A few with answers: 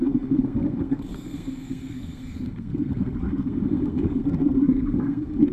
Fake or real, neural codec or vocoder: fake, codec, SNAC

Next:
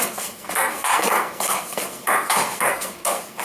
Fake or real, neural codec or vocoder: fake, codec, SNAC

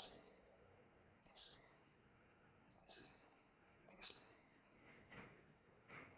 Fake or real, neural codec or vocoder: fake, codec, SNAC